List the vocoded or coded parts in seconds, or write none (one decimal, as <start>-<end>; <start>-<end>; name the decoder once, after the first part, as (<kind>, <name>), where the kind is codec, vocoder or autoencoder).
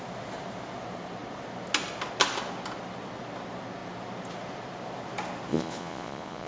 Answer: 5.5-6.5 (vocoder, Vocos)